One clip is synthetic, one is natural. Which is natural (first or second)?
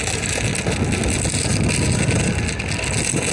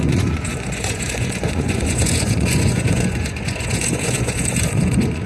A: first